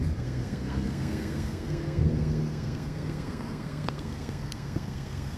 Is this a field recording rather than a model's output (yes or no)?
no